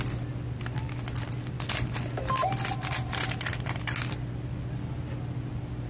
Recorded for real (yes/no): yes